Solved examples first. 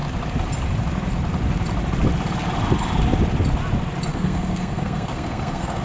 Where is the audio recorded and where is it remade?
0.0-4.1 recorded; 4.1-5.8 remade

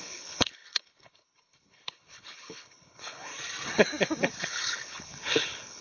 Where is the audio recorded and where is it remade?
0.0-3.3 remade; 3.3-4.4 recorded; 4.4-5.8 remade

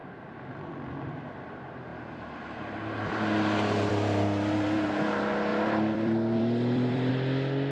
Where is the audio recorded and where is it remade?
0.0-1.9 recorded; 1.9-3.9 remade; 3.9-5.5 recorded; 5.5-7.1 remade; 7.1-7.7 recorded

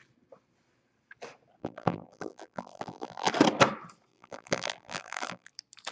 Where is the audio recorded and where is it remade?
0.0-1.6 recorded; 1.6-3.3 remade; 3.3-4.1 recorded; 4.1-5.5 remade; 5.5-5.9 recorded

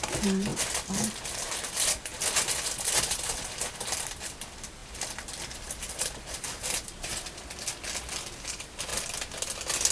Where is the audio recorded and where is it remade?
0.0-0.5 remade; 0.5-1.5 recorded; 1.5-2.1 remade; 2.1-3.8 recorded; 3.8-8.9 remade; 8.9-9.9 recorded